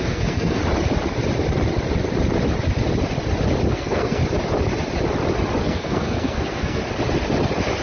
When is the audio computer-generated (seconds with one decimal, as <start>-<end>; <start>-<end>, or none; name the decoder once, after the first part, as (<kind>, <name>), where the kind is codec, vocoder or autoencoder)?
0.0-0.6 (codec, SNAC); 3.7-4.2; 5.6-6.8